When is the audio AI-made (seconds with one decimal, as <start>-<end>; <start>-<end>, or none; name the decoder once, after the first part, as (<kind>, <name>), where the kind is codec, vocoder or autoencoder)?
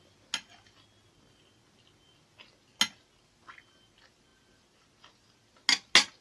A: none